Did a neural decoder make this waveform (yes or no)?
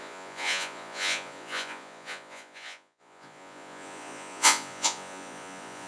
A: yes